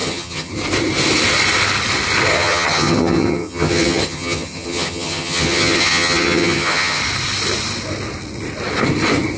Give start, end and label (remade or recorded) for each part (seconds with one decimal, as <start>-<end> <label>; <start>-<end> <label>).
0.0-0.5 remade; 0.5-2.3 recorded; 2.3-7.0 remade; 7.0-9.4 recorded